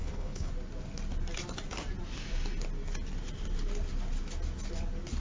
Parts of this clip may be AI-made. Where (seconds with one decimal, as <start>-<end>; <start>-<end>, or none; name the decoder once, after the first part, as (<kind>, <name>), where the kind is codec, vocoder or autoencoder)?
0.0-0.5 (codec, HILCodec)